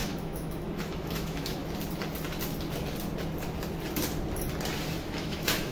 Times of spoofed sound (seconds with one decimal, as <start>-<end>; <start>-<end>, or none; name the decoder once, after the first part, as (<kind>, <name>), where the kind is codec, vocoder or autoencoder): 0.0-1.6 (autoencoder, DAC-VAE); 5.0-5.7